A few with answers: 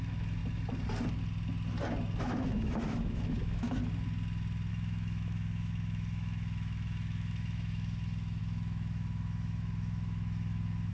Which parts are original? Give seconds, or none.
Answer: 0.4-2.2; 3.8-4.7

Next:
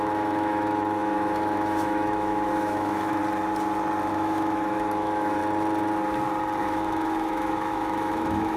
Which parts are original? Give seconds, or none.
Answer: 3.2-4.1; 5.4-6.6

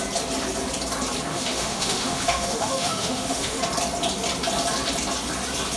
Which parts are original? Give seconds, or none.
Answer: 0.0-1.3; 3.6-5.8

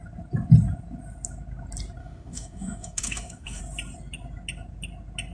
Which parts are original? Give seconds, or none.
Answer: 0.0-2.0; 3.6-5.3

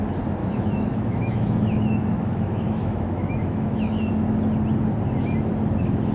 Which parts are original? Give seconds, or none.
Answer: 0.0-0.4; 4.1-6.1

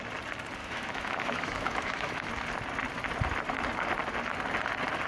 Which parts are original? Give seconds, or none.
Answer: 0.0-0.6; 2.3-5.1

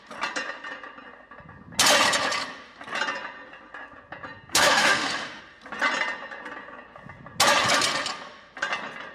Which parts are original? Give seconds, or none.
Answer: 0.0-4.5; 5.4-9.1